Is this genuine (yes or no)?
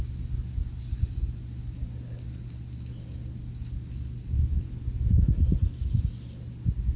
yes